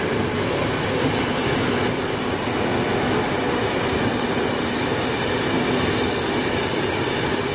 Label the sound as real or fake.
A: real